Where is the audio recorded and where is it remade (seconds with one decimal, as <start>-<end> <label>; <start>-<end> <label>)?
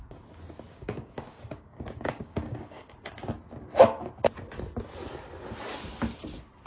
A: 0.0-0.7 recorded; 0.7-2.9 remade; 2.9-6.7 recorded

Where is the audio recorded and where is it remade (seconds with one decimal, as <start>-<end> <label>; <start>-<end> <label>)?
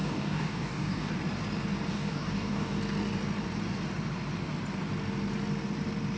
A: 0.0-1.1 remade; 1.1-1.9 recorded; 1.9-2.8 remade; 2.8-6.2 recorded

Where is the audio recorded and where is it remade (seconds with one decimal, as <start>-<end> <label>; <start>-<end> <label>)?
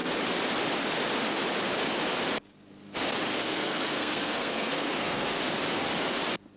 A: 0.0-3.3 recorded; 3.3-5.4 remade; 5.4-6.6 recorded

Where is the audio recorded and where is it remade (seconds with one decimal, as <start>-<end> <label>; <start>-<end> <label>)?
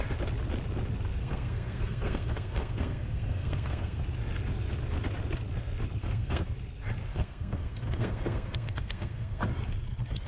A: 0.0-1.2 recorded; 1.2-4.0 remade; 4.0-6.0 recorded; 6.0-6.5 remade; 6.5-7.1 recorded; 7.1-9.4 remade; 9.4-10.3 recorded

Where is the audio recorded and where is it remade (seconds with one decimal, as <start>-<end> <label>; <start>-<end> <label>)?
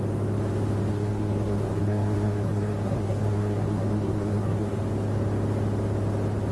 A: 0.0-0.9 recorded; 0.9-4.8 remade; 4.8-6.5 recorded